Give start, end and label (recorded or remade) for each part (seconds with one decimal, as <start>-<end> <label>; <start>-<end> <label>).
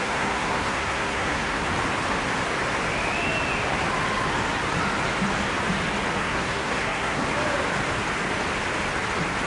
0.0-1.7 remade; 1.7-6.2 recorded; 6.2-7.2 remade; 7.2-9.5 recorded